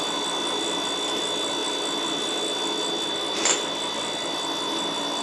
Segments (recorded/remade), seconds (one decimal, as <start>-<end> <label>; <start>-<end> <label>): 0.0-5.2 recorded